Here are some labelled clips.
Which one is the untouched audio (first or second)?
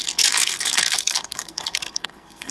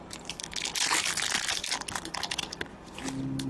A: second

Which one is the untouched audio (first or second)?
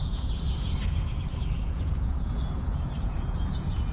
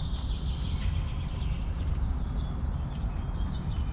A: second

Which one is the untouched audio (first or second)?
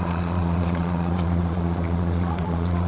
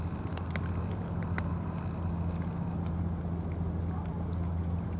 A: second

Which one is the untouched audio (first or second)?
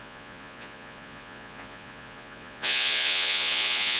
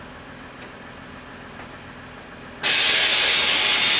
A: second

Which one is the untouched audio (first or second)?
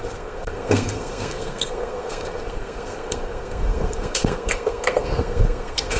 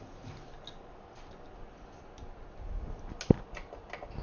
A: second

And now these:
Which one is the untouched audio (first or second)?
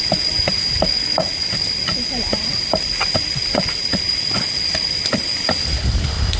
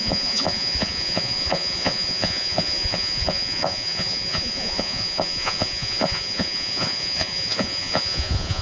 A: first